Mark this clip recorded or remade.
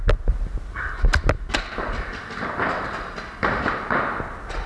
recorded